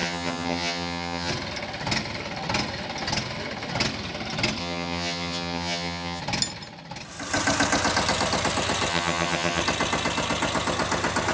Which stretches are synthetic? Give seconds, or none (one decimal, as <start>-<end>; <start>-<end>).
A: 0.0-1.3; 4.6-6.2; 8.9-9.6